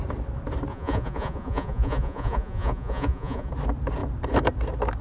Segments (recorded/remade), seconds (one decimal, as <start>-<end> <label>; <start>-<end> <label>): 0.0-0.7 recorded; 0.7-3.5 remade; 3.5-5.0 recorded